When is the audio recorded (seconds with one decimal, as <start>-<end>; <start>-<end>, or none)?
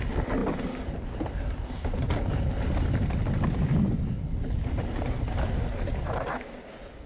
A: 0.0-7.1